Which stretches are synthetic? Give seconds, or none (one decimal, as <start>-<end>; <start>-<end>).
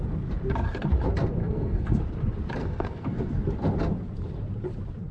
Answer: 1.4-2.0; 2.6-3.3